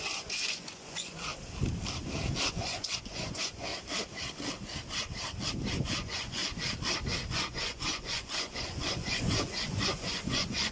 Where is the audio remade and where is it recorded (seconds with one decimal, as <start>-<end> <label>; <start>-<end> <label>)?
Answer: 0.0-1.3 remade; 1.3-2.5 recorded; 2.5-3.7 remade; 3.7-5.7 recorded; 5.7-6.4 remade; 6.4-7.3 recorded; 7.3-10.7 remade